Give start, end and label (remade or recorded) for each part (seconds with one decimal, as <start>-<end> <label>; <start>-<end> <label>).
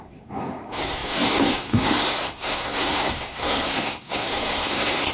0.0-5.1 remade